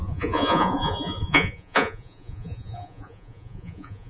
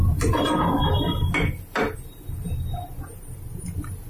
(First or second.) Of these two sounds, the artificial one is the first